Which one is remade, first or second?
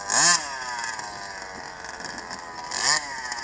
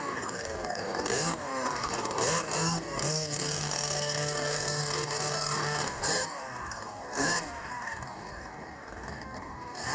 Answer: second